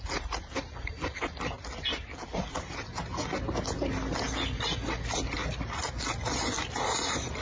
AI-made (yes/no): no